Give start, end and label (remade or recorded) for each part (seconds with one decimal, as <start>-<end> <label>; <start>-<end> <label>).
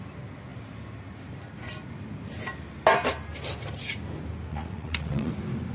0.0-4.5 recorded; 4.5-5.3 remade; 5.3-5.7 recorded